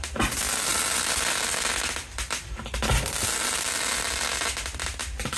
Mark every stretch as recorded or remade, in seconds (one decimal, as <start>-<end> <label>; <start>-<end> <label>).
0.0-5.4 recorded